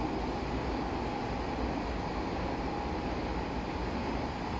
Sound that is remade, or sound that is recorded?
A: recorded